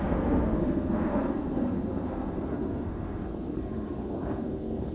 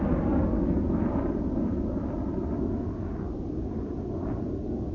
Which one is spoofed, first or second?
first